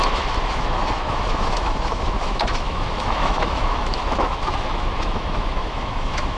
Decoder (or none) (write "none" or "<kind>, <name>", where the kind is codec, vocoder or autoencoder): autoencoder, DAC-VAE